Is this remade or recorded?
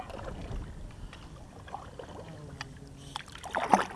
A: recorded